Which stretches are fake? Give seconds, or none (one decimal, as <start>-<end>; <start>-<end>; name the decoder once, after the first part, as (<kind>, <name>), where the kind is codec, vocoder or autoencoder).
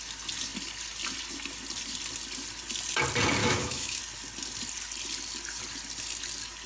3.4-4.0 (autoencoder, DAC-VAE)